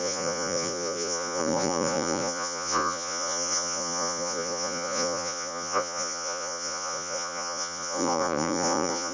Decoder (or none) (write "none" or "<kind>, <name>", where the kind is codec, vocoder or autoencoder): vocoder, Vocos